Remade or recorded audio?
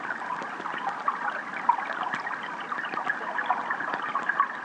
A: recorded